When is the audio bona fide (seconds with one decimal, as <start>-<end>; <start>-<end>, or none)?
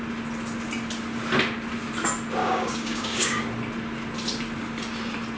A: 0.0-2.4; 3.4-5.4